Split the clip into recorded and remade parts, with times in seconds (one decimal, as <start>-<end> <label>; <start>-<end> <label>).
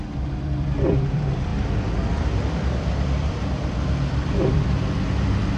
0.0-5.6 remade